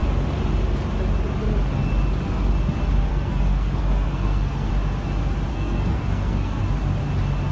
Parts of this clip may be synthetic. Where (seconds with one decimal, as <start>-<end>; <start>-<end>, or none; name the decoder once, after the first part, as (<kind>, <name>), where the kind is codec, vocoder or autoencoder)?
3.1-4.7 (codec, SNAC); 5.5-6.6